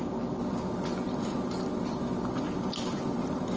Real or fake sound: fake